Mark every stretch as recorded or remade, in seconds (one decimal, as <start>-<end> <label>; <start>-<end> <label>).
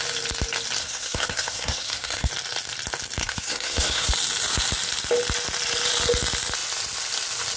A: 0.0-0.8 recorded; 0.8-2.3 remade; 2.3-3.2 recorded; 3.2-4.1 remade; 4.1-7.6 recorded